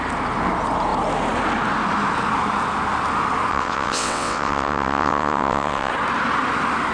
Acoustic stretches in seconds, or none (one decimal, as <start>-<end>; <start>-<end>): 0.0-3.5; 5.9-6.9